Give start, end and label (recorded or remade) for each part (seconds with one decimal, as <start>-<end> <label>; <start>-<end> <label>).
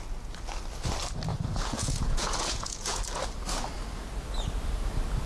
0.0-1.3 recorded; 1.3-3.0 remade; 3.0-5.3 recorded